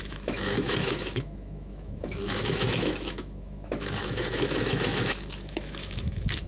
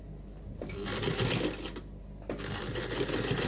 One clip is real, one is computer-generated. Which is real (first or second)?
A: second